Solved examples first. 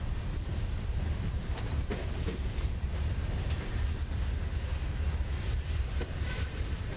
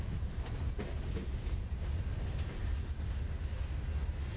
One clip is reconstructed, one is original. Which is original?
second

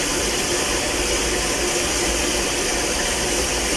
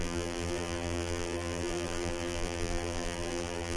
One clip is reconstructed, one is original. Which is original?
first